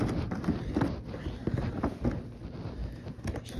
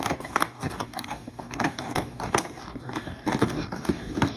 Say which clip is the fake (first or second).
second